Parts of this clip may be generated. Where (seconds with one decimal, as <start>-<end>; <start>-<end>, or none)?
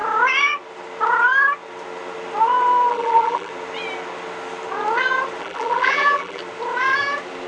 2.9-3.5; 5.4-6.4